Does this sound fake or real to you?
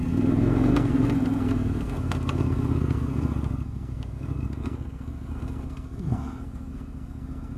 fake